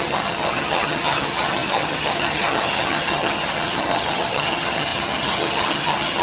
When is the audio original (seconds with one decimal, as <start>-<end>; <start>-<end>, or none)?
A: none